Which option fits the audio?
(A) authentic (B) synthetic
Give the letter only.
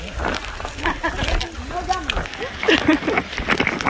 A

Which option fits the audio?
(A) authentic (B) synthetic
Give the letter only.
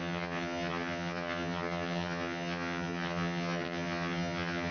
B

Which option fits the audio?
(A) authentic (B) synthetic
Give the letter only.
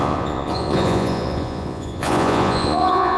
B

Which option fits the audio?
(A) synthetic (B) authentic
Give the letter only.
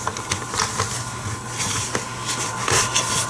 B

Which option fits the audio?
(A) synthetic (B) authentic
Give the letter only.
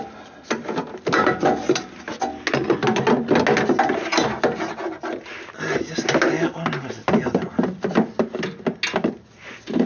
B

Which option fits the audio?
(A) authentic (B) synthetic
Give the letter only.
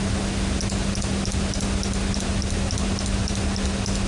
A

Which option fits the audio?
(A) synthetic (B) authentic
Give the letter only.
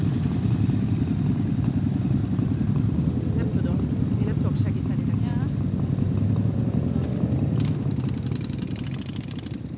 B